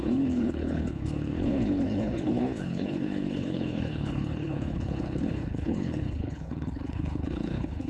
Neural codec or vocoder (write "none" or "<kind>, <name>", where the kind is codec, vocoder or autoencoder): codec, HILCodec